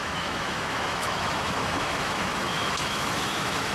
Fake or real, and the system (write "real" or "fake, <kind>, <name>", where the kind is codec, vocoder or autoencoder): fake, autoencoder, DAC-VAE